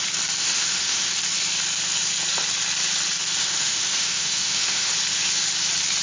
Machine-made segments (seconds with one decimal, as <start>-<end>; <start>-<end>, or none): 0.4-1.1; 3.4-4.9